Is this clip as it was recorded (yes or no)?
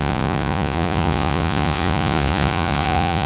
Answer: no